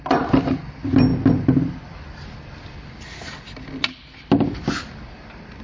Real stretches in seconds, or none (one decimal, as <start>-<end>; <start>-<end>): 0.0-5.6